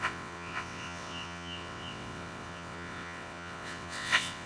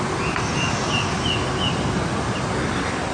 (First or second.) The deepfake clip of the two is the first